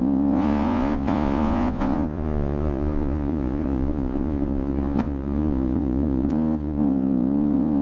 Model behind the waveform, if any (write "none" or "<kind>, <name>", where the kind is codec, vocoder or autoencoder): vocoder, Vocos